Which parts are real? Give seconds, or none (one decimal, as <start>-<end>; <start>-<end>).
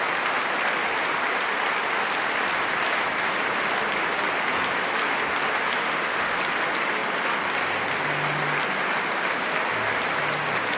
0.0-5.8; 6.4-10.8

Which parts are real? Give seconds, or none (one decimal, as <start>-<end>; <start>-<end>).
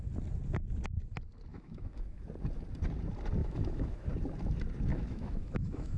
0.0-1.5; 2.2-3.4; 4.1-4.9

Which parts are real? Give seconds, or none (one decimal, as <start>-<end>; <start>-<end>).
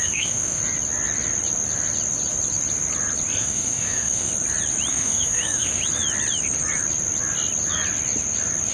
0.6-3.4; 4.3-4.9; 5.8-8.7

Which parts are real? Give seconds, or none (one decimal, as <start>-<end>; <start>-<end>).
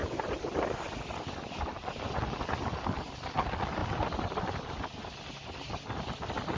0.0-6.6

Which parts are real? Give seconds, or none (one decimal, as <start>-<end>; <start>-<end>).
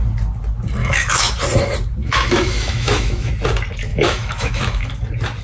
0.0-0.8; 1.3-2.0; 3.3-3.9; 4.9-5.4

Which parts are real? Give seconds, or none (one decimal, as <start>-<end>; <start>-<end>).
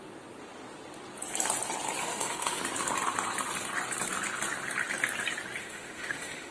0.0-2.0; 2.6-5.6